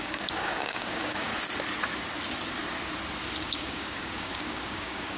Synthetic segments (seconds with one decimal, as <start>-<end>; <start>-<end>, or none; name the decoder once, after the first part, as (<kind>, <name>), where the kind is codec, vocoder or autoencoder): 0.0-1.3 (codec, DAC); 3.4-5.2